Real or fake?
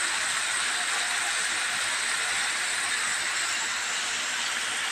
real